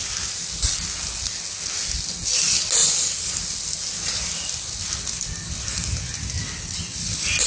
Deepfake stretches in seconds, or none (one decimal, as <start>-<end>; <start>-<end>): none